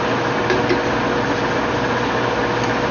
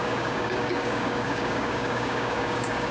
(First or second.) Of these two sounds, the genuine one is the first